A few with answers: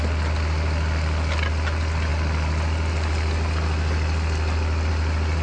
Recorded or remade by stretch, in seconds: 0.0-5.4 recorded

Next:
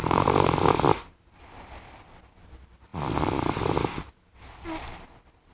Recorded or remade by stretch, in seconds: 0.0-5.5 remade

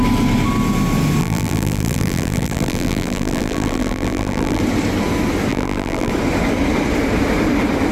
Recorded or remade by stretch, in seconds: 0.0-1.2 recorded; 1.2-4.6 remade; 4.6-5.5 recorded; 5.5-6.1 remade; 6.1-7.9 recorded

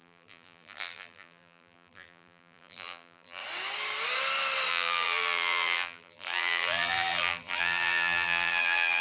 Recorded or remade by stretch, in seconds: 0.0-3.4 remade; 3.4-4.7 recorded; 4.7-9.0 remade

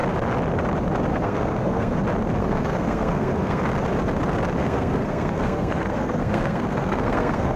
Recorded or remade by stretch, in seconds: 0.0-1.1 recorded; 1.1-2.0 remade; 2.0-2.4 recorded; 2.4-3.6 remade; 3.6-4.6 recorded; 4.6-7.6 remade

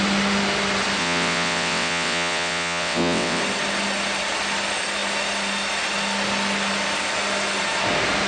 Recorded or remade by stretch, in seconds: 0.0-1.0 recorded; 1.0-3.4 remade; 3.4-8.3 recorded